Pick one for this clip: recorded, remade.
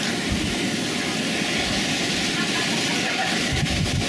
recorded